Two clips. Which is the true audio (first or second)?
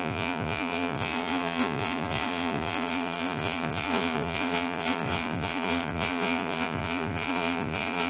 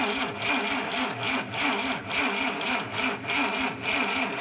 second